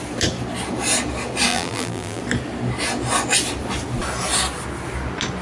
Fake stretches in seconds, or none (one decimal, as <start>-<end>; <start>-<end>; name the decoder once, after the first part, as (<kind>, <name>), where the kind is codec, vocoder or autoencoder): 1.5-2.2 (vocoder, BigVGAN v2)